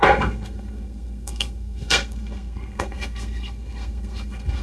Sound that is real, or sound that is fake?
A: fake